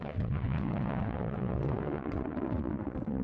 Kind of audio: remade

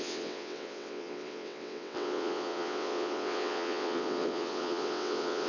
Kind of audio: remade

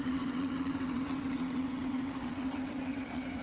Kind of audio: remade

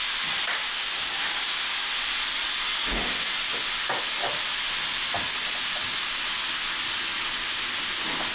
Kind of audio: recorded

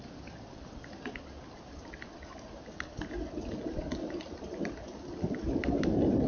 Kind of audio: recorded